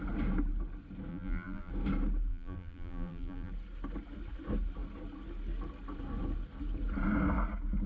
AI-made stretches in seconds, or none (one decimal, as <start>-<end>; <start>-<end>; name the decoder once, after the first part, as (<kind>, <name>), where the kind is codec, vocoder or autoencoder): 1.1-1.7 (vocoder, BigVGAN v2); 2.3-3.5